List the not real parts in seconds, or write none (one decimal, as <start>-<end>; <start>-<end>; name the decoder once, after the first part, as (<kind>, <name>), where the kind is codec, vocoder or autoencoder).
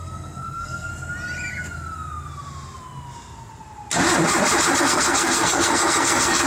0.0-0.9 (codec, SNAC); 4.8-6.5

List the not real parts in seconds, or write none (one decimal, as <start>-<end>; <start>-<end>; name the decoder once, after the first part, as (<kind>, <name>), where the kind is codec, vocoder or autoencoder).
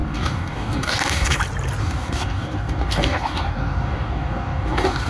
0.0-1.4 (codec, DAC); 1.8-5.1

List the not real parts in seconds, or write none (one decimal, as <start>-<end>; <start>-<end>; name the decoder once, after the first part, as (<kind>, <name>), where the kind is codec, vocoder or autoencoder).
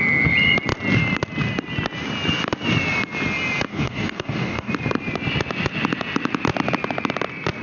3.7-4.7 (codec, DAC)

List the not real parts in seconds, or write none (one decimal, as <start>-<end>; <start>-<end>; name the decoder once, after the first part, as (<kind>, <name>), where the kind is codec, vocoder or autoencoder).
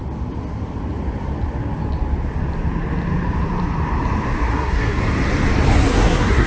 4.5-5.0 (codec, SNAC); 5.9-6.5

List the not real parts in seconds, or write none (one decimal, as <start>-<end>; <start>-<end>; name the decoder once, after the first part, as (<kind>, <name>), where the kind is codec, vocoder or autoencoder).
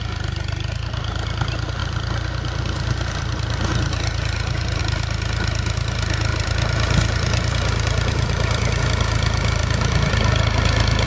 1.8-4.8 (vocoder, BigVGAN v2); 6.3-8.8; 9.6-10.4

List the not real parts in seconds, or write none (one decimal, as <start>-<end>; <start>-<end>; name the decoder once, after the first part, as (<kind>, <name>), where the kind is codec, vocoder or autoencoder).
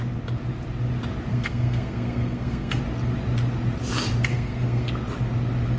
1.3-2.8 (codec, SNAC); 4.3-4.9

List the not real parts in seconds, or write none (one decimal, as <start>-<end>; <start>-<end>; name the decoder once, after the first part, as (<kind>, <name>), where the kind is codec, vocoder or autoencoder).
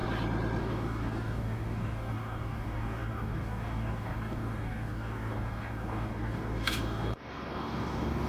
0.6-8.3 (codec, DAC)